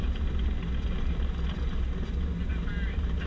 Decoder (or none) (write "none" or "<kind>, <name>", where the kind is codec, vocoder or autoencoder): none